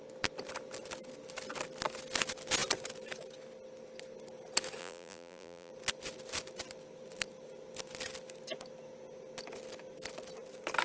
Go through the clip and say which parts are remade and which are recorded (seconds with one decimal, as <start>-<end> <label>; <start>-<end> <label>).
0.0-4.8 recorded; 4.8-5.7 remade; 5.7-10.8 recorded